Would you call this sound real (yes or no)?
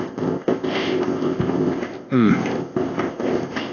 no